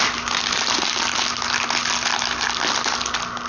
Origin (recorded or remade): recorded